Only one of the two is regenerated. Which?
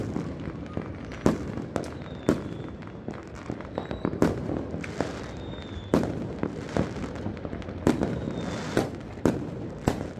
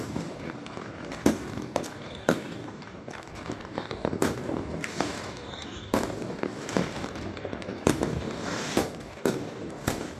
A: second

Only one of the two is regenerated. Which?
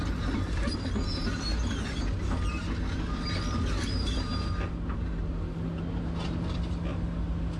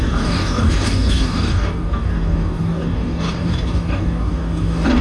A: second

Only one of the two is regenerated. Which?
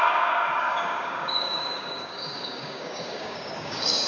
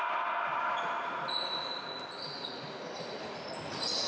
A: first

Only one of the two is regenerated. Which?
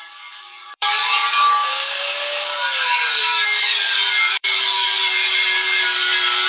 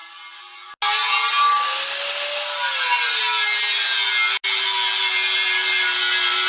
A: first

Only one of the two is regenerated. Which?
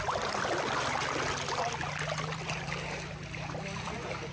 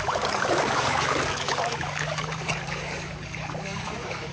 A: second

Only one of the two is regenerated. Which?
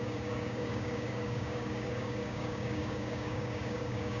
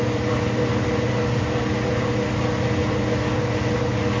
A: first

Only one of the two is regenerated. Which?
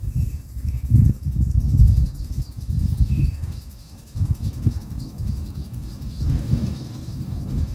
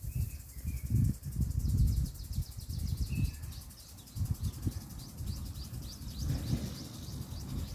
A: first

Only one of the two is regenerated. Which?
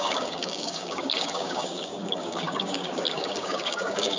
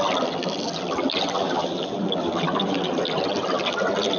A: first